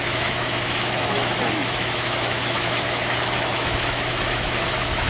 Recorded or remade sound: remade